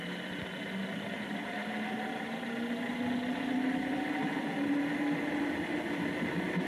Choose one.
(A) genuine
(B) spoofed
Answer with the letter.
A